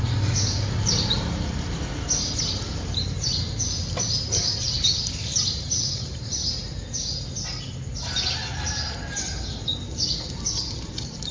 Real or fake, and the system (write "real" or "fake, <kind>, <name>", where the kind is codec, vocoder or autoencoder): real